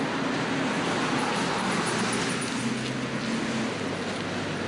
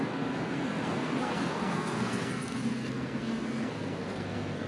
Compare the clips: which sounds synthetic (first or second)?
second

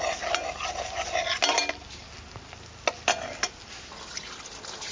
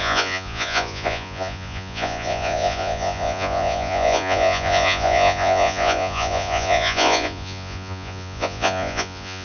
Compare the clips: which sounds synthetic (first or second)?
second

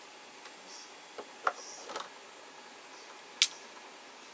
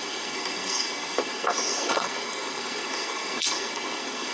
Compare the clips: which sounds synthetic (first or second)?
second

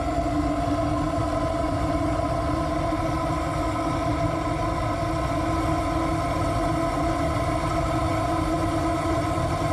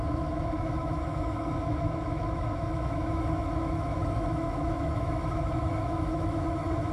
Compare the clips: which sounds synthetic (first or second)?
second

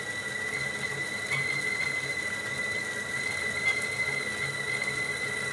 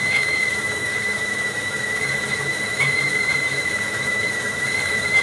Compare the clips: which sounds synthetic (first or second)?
second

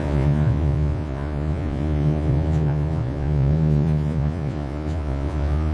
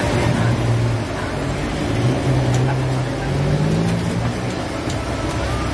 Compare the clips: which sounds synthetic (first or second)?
first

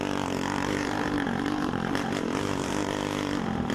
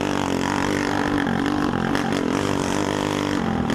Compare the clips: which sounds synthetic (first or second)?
first